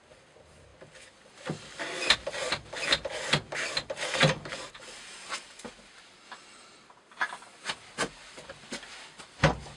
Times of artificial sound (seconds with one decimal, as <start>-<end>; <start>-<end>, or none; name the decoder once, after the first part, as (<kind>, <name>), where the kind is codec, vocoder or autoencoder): none